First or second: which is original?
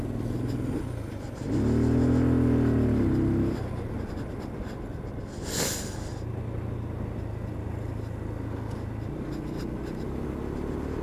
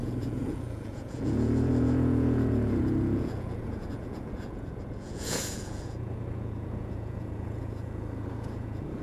first